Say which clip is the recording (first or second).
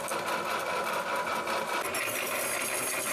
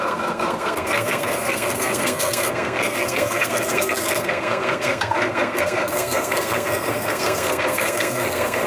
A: first